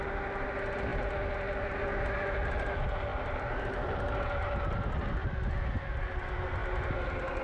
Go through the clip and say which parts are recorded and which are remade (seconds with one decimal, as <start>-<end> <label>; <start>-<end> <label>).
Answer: 0.0-7.4 recorded